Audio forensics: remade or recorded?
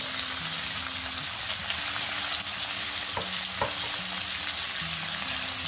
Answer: recorded